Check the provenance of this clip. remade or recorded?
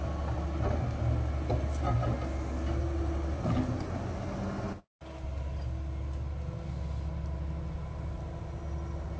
recorded